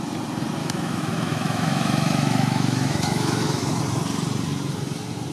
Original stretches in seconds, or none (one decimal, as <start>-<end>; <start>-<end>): 0.0-0.6; 3.8-5.3